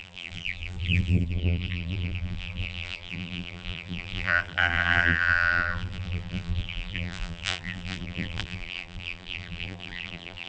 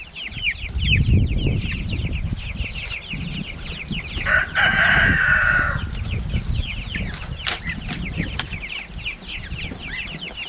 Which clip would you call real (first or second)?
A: second